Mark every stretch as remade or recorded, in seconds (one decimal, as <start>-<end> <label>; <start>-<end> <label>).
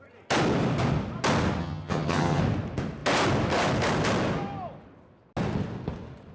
0.0-1.6 recorded; 1.6-2.4 remade; 2.4-6.3 recorded